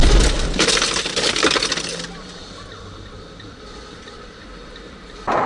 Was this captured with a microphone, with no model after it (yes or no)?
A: no